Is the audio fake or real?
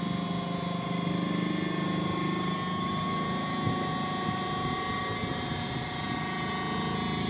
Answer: real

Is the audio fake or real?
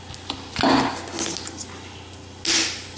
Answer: real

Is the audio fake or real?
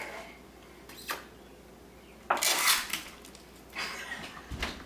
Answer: real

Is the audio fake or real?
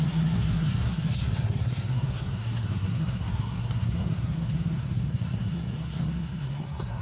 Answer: fake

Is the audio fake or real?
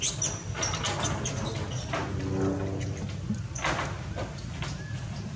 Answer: real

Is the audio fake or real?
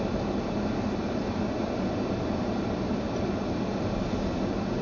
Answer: real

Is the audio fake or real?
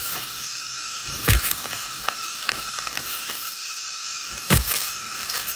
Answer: fake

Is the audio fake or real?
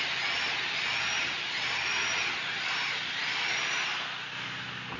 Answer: real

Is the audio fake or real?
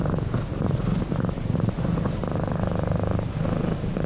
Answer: real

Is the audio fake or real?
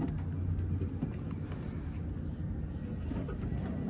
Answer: real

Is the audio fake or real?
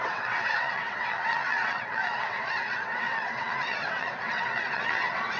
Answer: fake